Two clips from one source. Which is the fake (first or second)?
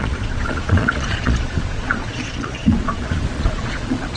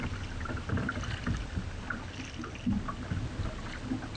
first